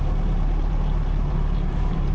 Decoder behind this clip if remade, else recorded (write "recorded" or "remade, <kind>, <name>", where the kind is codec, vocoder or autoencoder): remade, vocoder, BigVGAN v2